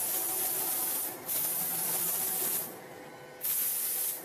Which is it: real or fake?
real